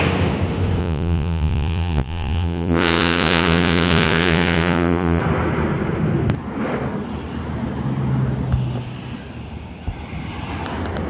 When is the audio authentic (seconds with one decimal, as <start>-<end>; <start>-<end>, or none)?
0.0-0.8; 5.2-11.1